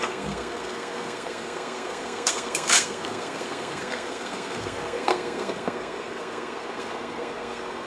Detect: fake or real fake